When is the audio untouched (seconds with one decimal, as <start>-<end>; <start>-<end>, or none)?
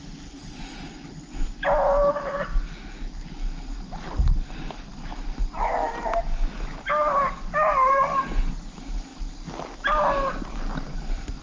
0.0-11.4